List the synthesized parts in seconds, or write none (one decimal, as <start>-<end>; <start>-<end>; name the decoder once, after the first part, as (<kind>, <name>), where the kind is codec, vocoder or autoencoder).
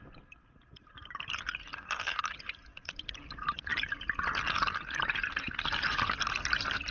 none